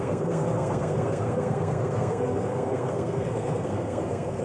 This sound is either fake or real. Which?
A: fake